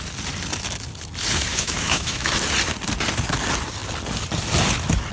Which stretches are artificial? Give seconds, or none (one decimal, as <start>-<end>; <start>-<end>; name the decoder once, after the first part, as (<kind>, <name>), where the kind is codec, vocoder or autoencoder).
1.5-2.3 (autoencoder, DAC-VAE)